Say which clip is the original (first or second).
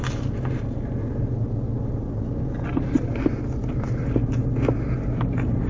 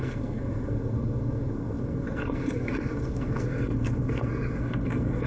first